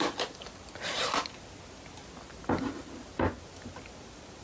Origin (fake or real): real